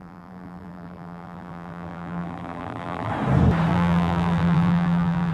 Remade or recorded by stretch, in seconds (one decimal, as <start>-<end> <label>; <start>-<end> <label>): 0.0-3.1 remade; 3.1-3.7 recorded; 3.7-5.3 remade